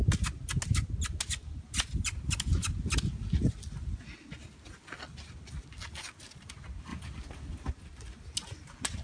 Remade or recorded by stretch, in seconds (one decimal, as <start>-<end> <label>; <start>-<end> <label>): 0.0-9.0 recorded